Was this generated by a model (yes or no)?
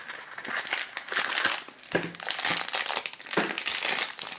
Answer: no